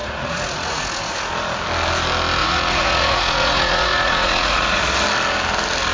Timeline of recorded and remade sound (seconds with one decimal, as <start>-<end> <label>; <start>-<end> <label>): 0.0-1.3 remade; 1.3-2.4 recorded; 2.4-4.8 remade; 4.8-5.9 recorded